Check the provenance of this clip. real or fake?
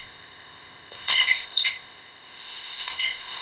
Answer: fake